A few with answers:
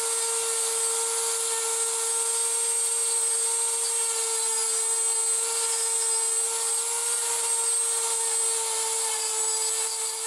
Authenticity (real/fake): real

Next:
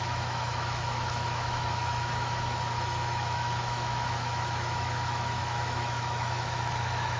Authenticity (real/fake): fake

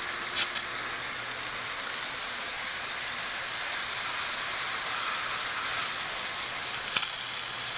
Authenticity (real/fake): real